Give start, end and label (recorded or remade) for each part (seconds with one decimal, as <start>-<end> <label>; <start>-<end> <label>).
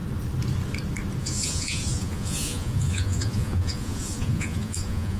0.0-1.2 recorded; 1.2-5.2 remade